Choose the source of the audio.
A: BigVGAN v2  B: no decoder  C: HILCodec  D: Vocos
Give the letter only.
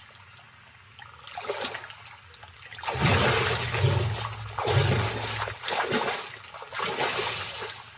B